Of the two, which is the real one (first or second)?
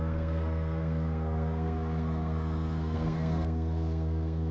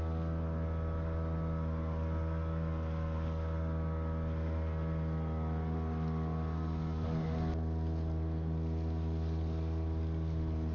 second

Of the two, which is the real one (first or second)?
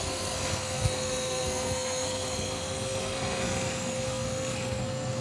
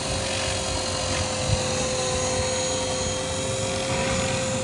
second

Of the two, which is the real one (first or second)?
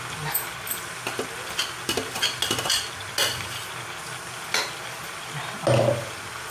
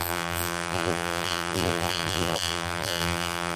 first